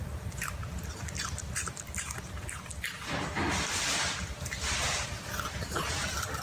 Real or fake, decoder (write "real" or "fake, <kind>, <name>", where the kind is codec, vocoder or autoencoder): real